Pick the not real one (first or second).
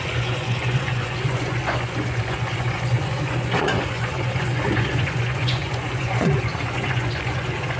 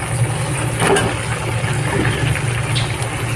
first